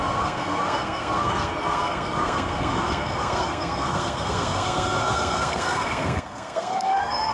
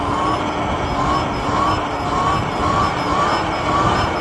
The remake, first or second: first